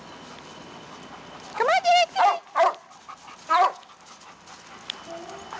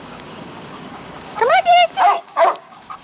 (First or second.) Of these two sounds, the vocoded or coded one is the second